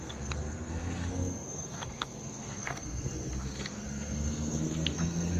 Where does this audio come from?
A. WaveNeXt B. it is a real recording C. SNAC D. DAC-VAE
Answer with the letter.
C